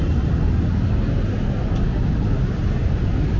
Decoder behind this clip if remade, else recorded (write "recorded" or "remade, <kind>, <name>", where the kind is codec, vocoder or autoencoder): recorded